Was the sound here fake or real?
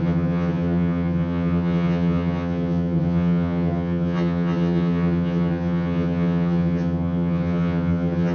fake